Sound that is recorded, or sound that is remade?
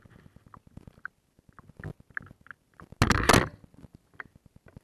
recorded